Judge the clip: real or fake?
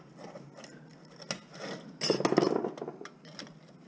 real